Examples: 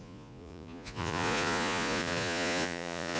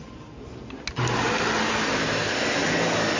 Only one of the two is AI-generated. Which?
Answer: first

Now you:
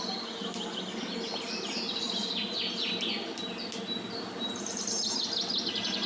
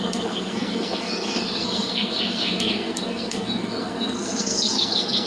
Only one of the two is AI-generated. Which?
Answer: second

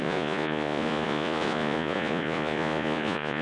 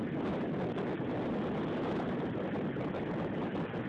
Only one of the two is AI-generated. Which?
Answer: first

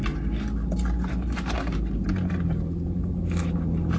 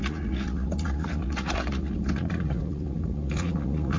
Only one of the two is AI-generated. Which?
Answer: second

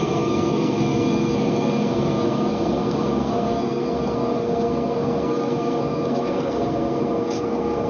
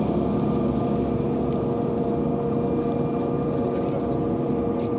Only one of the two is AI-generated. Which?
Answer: first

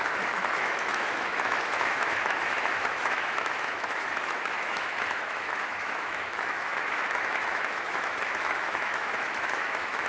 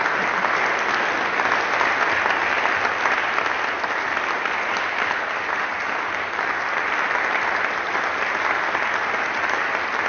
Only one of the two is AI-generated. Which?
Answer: first